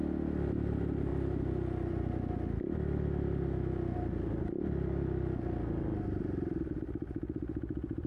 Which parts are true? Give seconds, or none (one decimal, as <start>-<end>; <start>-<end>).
0.0-8.1